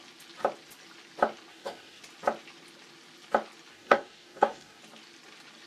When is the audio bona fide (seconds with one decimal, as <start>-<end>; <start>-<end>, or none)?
0.0-1.5; 2.0-3.7; 4.8-5.7